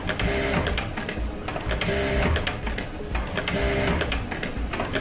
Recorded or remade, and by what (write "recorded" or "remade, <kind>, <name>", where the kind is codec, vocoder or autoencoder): recorded